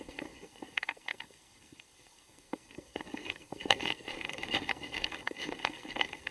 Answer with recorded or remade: remade